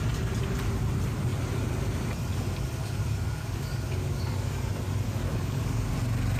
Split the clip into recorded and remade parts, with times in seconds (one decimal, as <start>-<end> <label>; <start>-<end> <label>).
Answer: 0.0-2.8 recorded; 2.8-4.7 remade; 4.7-5.2 recorded; 5.2-5.9 remade; 5.9-6.4 recorded